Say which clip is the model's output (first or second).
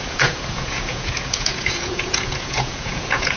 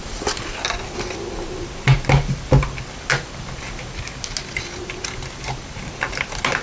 first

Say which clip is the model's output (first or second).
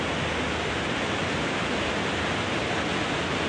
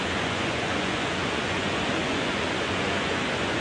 second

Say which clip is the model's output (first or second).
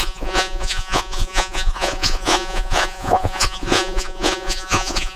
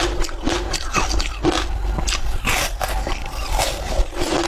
first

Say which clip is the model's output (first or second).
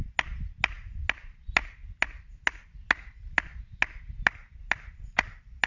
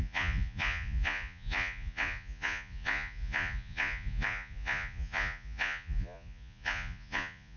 second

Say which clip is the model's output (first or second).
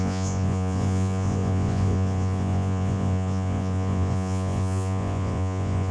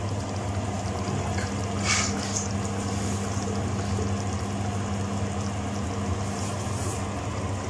first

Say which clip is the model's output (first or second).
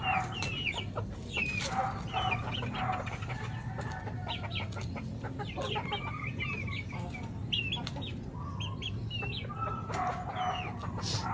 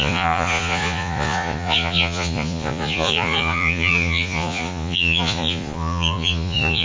second